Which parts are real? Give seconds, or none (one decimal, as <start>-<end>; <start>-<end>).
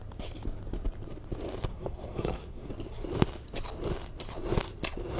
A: 0.0-1.7; 2.7-5.2